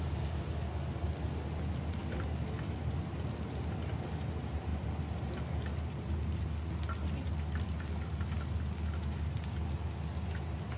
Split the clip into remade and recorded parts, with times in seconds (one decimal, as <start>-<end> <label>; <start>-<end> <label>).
0.0-10.8 recorded